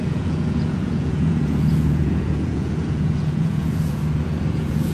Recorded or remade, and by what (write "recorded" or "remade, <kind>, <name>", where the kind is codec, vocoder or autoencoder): remade, vocoder, Vocos